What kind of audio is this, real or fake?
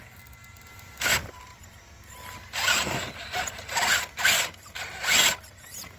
real